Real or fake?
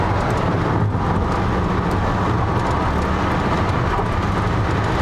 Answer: real